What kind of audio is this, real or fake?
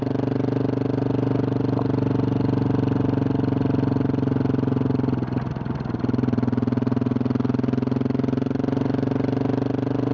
real